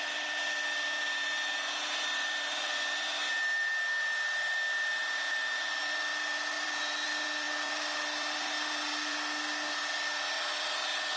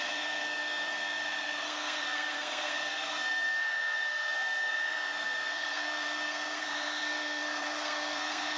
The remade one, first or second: second